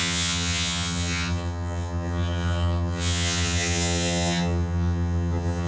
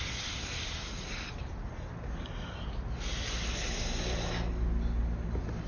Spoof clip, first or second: first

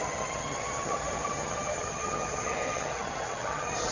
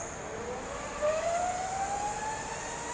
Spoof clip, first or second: first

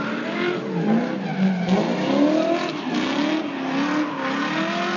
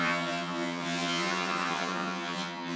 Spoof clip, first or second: second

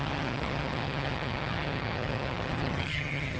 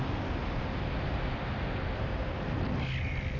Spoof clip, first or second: first